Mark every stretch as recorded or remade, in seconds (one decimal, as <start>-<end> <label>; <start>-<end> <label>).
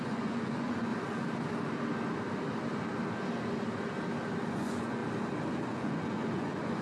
0.0-0.9 remade; 0.9-4.5 recorded; 4.5-5.0 remade; 5.0-5.5 recorded; 5.5-6.8 remade